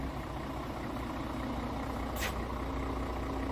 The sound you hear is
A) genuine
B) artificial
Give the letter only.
A